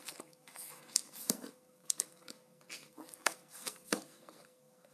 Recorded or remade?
remade